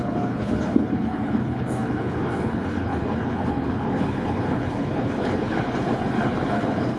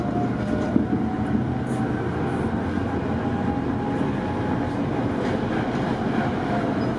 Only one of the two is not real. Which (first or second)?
first